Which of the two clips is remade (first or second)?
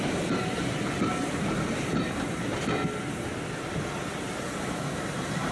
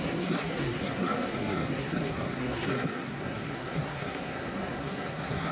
second